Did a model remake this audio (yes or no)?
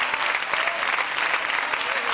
no